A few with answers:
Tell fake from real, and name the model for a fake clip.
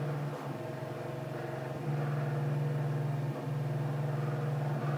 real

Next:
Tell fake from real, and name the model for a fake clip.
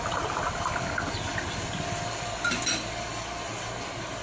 fake, vocoder, BigVGAN v2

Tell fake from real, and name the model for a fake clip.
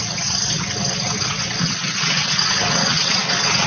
fake, vocoder, WaveNeXt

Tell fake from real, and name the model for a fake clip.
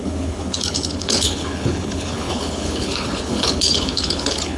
fake, codec, HILCodec